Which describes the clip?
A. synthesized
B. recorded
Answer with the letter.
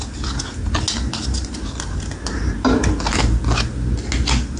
B